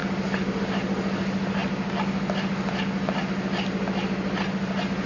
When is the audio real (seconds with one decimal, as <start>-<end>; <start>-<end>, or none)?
0.0-5.1